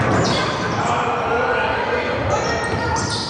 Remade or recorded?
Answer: recorded